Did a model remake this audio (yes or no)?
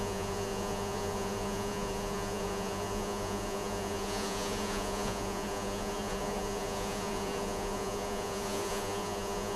yes